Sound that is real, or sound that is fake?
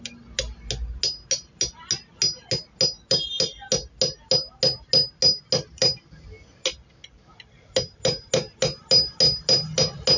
real